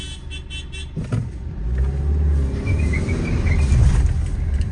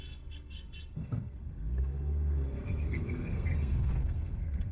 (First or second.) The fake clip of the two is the second